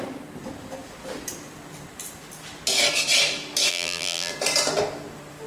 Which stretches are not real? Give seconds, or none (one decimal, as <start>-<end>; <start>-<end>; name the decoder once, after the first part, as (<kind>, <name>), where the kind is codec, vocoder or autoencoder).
3.7-4.3 (vocoder, BigVGAN v2)